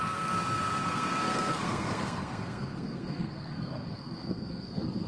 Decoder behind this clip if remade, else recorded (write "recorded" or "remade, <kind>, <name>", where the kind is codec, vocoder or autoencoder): remade, codec, SNAC